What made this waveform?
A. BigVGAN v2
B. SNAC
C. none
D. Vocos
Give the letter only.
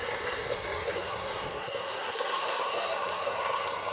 B